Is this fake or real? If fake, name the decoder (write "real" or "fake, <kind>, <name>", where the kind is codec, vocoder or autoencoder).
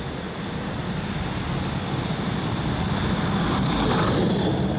real